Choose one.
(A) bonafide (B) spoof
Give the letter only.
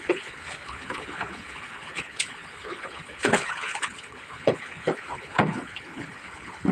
B